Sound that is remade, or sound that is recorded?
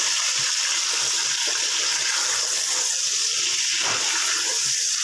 recorded